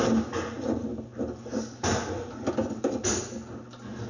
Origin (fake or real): real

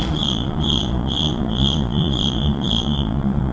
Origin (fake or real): fake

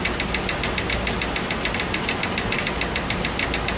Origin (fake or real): real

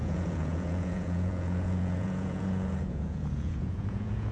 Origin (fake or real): fake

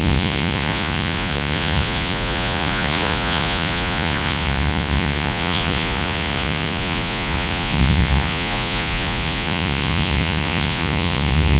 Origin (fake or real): fake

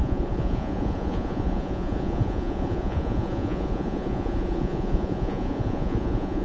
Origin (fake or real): fake